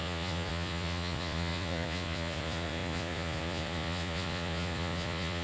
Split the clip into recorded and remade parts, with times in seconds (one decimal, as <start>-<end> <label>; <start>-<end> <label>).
0.0-5.4 remade